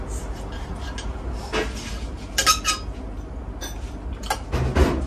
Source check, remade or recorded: recorded